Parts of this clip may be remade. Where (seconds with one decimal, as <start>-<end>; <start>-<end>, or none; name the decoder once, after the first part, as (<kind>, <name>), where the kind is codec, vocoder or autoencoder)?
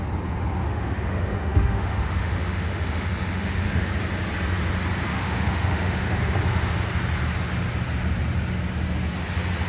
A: 0.6-3.9 (autoencoder, DAC-VAE); 5.1-6.2